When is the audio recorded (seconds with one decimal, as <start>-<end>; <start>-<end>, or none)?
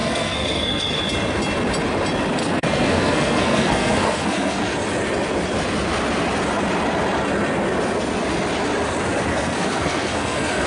1.0-2.4; 4.6-9.3